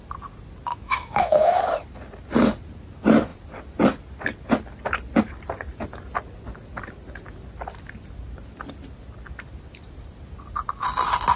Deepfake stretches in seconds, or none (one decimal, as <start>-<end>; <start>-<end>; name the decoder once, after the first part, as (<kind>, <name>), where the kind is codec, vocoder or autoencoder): 0.7-1.6 (autoencoder, DAC-VAE)